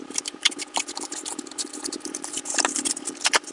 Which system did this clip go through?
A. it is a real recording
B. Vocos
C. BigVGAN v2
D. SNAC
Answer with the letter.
C